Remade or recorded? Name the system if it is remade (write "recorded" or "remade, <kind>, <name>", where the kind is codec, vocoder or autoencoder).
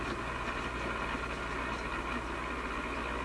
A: recorded